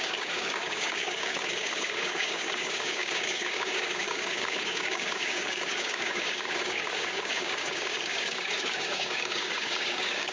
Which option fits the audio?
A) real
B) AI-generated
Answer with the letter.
B